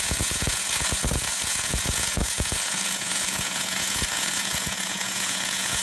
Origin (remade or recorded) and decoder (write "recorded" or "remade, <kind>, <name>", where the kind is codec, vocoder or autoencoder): remade, vocoder, Vocos